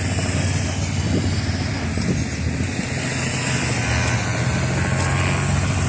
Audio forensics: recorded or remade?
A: recorded